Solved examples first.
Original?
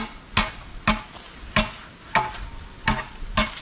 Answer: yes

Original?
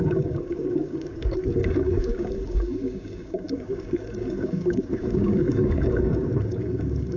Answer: no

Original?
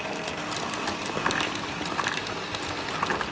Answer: yes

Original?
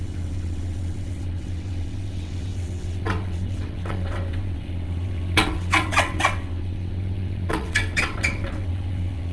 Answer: no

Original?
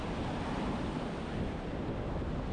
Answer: yes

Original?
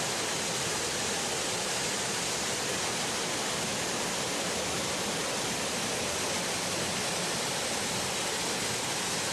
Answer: yes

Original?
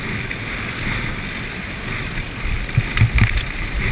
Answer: yes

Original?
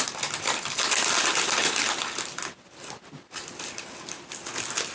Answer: yes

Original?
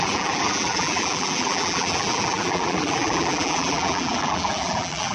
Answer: no